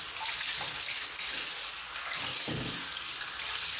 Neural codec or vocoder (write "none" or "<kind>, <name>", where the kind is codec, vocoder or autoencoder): none